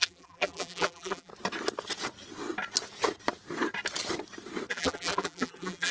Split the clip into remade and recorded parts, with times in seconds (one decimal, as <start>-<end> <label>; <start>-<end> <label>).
0.0-1.3 remade; 1.3-4.7 recorded; 4.7-5.9 remade